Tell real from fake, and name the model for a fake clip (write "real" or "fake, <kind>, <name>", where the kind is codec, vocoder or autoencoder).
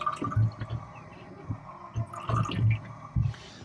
real